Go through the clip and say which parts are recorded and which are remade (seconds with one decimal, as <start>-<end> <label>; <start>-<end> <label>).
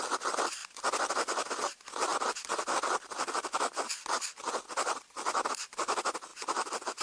0.0-7.0 recorded